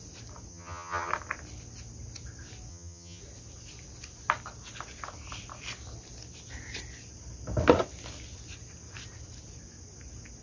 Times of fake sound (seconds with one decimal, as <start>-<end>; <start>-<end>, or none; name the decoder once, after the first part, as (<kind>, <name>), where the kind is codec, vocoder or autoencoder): 0.5-1.1 (vocoder, HiFi-GAN); 2.7-3.2